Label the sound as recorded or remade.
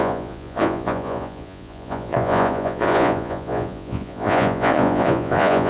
remade